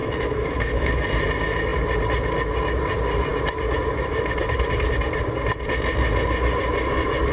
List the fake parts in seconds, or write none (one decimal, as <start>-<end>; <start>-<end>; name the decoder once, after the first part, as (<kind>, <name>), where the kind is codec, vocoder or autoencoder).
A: 0.0-0.9 (autoencoder, DAC-VAE)